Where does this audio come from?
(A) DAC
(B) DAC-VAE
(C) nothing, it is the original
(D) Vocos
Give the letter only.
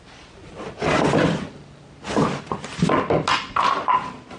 C